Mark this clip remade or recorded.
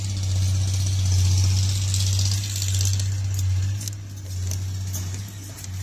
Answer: recorded